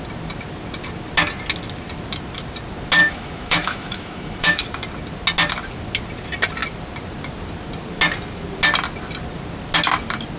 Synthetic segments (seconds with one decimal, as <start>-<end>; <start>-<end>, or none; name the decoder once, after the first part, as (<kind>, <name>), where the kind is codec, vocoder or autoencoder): 3.0-4.6 (autoencoder, DAC-VAE)